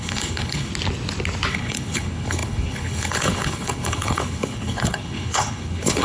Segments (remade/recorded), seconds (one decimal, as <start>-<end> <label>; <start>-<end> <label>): 0.0-0.7 remade; 0.7-1.5 recorded; 1.5-6.0 remade